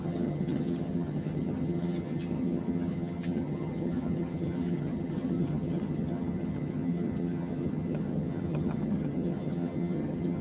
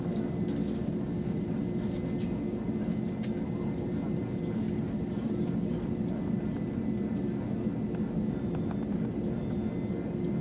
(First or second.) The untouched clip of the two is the second